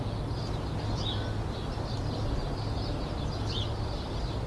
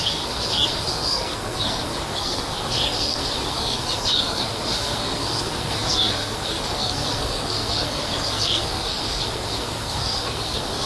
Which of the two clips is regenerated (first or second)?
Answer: second